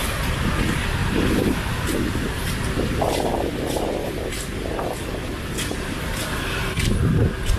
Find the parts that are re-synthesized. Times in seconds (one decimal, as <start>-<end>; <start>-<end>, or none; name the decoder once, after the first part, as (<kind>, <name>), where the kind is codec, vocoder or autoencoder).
none

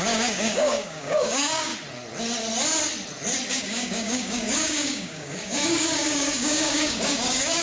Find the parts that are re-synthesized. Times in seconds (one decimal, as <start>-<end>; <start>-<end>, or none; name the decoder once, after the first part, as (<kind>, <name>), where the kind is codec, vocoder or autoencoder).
0.0-1.7 (codec, DAC); 3.5-7.6

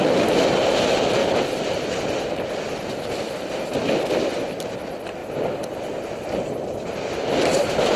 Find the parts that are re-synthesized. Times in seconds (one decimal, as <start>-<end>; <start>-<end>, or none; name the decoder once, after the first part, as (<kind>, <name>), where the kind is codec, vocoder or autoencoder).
5.2-7.3 (vocoder, BigVGAN v2)

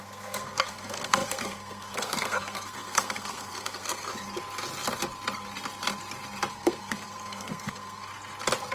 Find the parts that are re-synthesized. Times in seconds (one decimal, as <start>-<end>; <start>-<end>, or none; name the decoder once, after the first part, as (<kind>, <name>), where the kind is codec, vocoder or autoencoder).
0.0-4.1 (codec, SNAC); 6.5-8.1

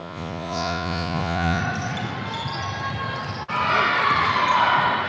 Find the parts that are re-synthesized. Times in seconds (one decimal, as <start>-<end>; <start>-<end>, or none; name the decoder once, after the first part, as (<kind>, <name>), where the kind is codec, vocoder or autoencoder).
0.0-1.6 (vocoder, Vocos)

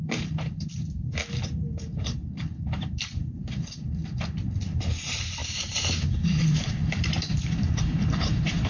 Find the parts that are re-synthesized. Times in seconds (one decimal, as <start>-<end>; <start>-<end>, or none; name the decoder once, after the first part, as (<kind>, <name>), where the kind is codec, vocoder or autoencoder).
0.0-1.2 (vocoder, BigVGAN v2); 1.8-2.2; 2.9-4.0; 4.9-8.7

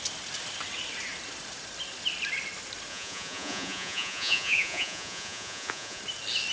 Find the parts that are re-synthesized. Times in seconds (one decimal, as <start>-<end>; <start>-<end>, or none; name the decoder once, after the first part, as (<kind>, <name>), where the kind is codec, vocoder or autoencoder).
2.9-6.0 (vocoder, Vocos)

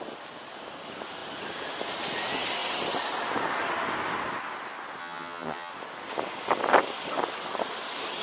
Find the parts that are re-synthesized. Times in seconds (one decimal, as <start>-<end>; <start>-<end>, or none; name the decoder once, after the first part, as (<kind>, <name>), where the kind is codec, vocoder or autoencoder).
5.0-5.7 (vocoder, HiFi-GAN)